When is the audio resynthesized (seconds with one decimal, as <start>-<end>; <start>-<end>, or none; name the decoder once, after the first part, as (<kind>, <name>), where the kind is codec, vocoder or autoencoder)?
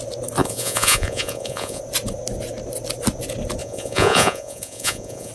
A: 0.4-1.8 (vocoder, Vocos); 3.6-5.3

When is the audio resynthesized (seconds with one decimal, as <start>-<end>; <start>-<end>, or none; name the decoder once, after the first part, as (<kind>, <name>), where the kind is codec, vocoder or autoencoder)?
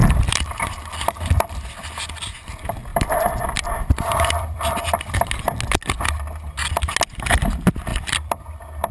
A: 2.9-4.6 (vocoder, BigVGAN v2); 7.9-8.9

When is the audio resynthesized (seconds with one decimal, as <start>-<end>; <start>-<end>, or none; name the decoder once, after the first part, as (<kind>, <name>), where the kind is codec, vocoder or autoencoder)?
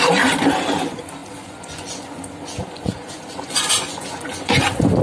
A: 1.2-2.2 (vocoder, Vocos); 2.6-4.6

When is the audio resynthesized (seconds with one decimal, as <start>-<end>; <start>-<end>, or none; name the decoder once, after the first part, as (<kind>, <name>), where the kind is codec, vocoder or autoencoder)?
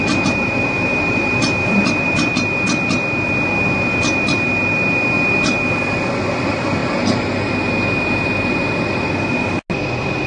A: 0.0-2.3 (vocoder, BigVGAN v2)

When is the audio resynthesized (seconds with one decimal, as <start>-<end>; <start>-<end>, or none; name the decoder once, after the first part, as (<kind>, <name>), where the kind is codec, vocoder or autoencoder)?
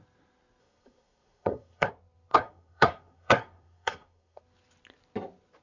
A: 0.6-1.9 (codec, SNAC); 2.3-4.4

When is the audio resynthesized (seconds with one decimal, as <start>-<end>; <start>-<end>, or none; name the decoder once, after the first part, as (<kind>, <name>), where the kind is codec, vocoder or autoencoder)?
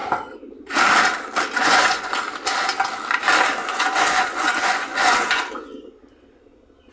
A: 1.6-2.2 (vocoder, Vocos); 3.6-5.4